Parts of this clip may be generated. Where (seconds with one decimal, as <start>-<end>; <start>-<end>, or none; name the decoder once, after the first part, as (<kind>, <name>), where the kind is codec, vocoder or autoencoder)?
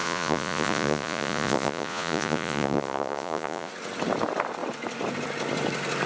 0.0-3.7 (vocoder, Vocos)